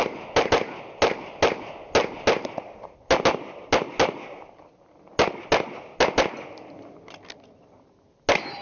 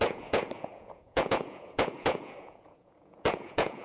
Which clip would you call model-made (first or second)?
second